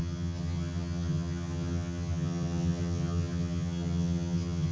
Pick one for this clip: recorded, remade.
remade